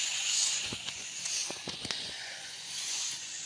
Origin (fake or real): fake